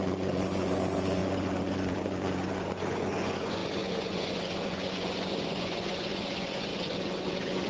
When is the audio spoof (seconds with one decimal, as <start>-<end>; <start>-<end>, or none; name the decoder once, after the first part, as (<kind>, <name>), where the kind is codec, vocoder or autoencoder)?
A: 0.0-7.7 (vocoder, Vocos)